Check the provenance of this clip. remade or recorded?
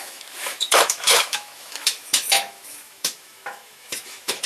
remade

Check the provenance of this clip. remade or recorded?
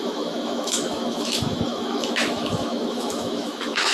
remade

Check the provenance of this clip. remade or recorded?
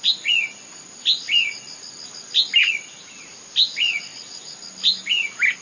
recorded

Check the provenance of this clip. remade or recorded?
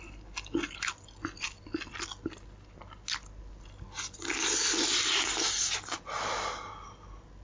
recorded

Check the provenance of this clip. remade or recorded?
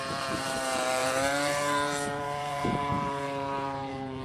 remade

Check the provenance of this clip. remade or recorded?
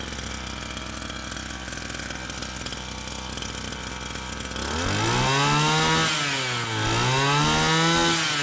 recorded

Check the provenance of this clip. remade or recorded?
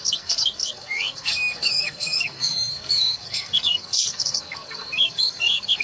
remade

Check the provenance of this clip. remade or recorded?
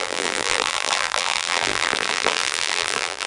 remade